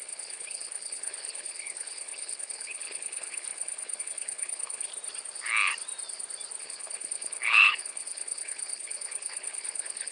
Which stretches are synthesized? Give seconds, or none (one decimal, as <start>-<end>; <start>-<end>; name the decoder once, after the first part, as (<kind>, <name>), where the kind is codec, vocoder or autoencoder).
0.0-4.9 (codec, HILCodec); 6.6-10.1